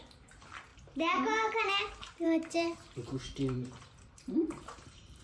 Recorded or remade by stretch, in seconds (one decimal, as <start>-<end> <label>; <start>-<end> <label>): 0.0-5.2 remade